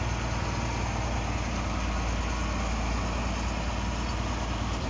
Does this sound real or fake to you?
real